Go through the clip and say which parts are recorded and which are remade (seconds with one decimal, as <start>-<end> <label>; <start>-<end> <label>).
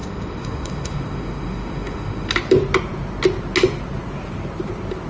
0.0-2.3 remade; 2.3-5.1 recorded